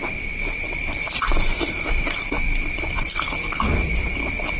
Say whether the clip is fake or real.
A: fake